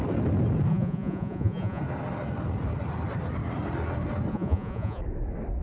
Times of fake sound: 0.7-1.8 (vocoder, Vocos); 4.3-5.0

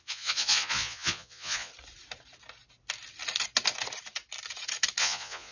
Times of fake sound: 0.0-1.7 (vocoder, Vocos); 5.0-5.5

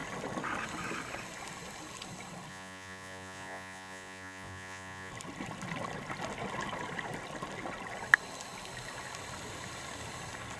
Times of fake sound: 2.5-5.1 (vocoder, Vocos)